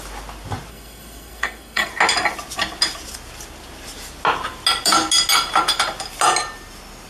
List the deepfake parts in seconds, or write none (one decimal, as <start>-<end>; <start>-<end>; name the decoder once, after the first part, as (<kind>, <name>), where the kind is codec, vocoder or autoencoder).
0.7-1.9 (codec, SNAC)